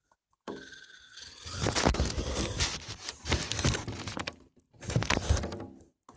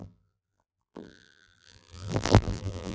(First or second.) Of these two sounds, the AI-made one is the second